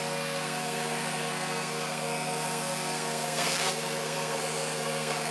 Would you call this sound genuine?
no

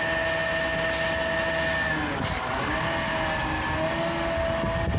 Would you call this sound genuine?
yes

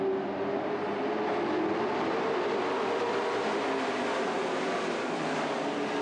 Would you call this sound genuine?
yes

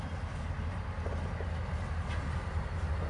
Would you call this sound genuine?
yes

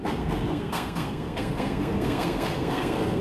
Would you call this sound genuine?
no